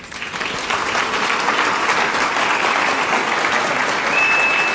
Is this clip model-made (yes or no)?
no